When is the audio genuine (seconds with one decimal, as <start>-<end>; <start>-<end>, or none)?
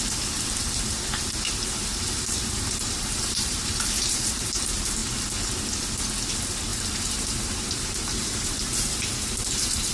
5.0-6.3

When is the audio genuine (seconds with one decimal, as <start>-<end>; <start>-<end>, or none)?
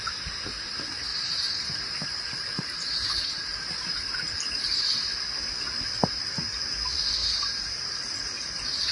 0.0-1.1; 4.6-7.2; 7.9-8.9